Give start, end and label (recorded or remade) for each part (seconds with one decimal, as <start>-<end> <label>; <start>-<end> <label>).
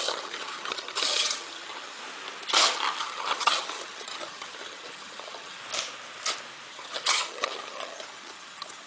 0.0-2.0 remade; 2.0-3.0 recorded; 3.0-5.6 remade; 5.6-6.7 recorded; 6.7-8.9 remade